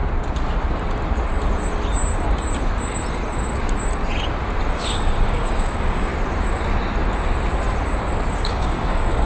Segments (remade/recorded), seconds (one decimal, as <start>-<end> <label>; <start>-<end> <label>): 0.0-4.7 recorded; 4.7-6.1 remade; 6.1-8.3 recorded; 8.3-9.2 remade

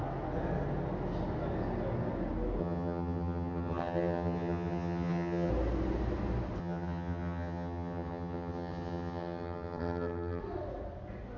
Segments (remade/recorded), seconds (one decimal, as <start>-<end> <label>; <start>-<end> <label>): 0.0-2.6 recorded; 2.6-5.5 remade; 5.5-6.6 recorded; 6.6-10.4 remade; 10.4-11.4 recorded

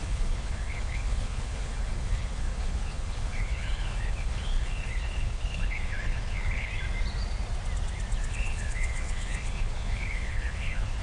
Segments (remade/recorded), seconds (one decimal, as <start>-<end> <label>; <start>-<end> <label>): 0.0-6.7 remade; 6.7-8.3 recorded; 8.3-11.0 remade